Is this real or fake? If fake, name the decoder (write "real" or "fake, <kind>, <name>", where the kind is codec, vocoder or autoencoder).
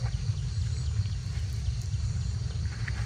real